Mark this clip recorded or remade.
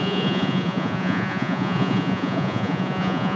remade